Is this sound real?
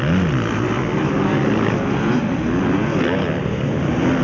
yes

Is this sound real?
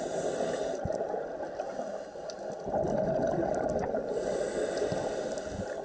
yes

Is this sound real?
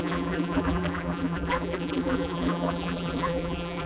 no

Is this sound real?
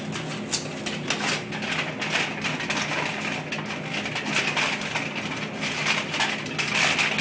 yes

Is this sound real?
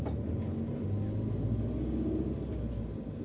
yes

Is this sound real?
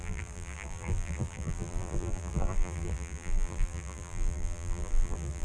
no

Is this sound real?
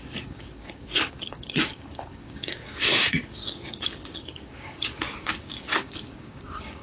no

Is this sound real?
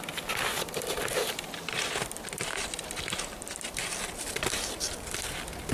yes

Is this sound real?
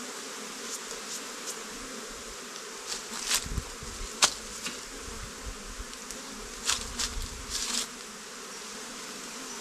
yes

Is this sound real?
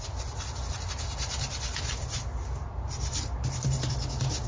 yes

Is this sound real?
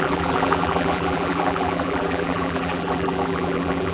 no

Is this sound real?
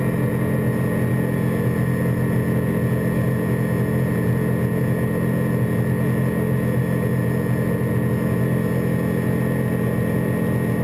yes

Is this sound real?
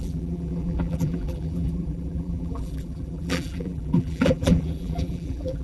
no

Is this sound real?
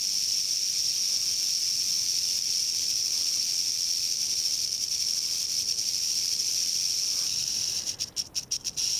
yes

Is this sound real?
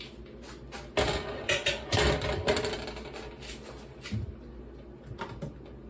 yes